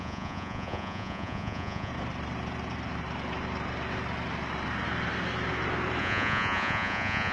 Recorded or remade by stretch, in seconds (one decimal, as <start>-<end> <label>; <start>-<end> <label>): 0.0-1.9 remade; 1.9-6.0 recorded; 6.0-7.3 remade